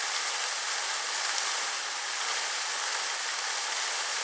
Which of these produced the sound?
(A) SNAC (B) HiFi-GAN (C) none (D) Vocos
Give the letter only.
C